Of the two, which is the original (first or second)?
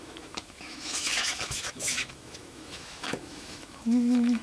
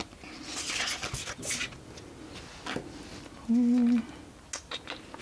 second